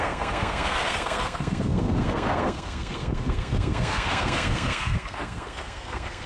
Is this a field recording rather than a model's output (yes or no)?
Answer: no